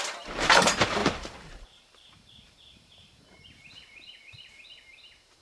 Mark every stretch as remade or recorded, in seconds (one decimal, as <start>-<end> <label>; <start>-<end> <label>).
0.0-5.4 remade